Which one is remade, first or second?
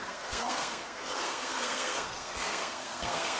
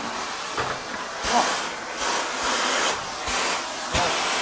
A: first